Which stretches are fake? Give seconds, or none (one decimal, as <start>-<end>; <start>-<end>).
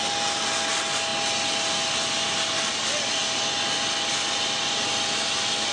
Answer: none